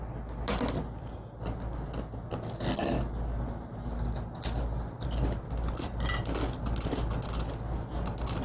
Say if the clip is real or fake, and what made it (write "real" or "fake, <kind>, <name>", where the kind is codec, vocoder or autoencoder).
real